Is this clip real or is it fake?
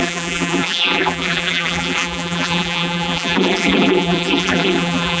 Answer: fake